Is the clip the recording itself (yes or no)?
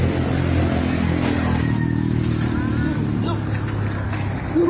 yes